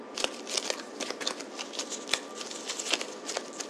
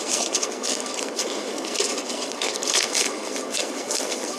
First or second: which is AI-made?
second